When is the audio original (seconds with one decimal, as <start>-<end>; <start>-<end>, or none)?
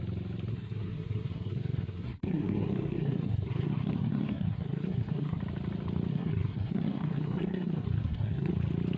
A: 0.0-0.5; 5.4-6.1; 8.5-9.0